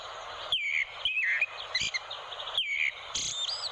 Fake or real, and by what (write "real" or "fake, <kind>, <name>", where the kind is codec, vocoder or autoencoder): real